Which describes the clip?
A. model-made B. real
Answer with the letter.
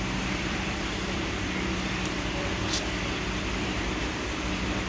A